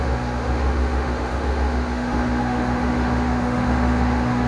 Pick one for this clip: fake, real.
fake